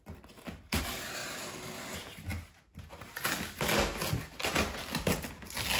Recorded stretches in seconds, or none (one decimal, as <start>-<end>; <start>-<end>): 0.0-5.8